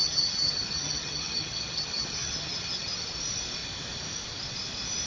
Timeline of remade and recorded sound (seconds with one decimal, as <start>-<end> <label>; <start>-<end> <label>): 0.0-3.1 remade; 3.1-5.1 recorded